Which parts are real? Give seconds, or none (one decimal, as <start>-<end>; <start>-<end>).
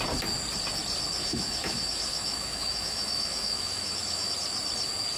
0.0-1.2; 4.3-5.2